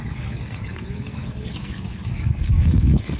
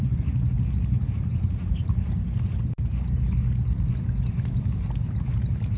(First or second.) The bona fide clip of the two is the second